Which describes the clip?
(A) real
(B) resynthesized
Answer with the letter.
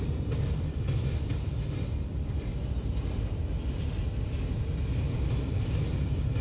A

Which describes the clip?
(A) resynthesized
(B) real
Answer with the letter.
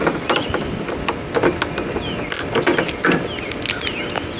B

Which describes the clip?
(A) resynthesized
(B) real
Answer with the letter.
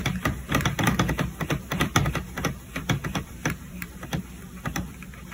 A